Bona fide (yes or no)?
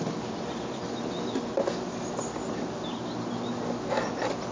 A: yes